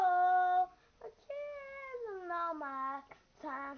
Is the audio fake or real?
real